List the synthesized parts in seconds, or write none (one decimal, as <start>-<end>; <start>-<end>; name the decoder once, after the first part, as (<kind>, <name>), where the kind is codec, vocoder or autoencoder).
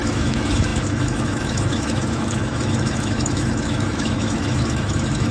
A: 0.0-5.3 (autoencoder, DAC-VAE)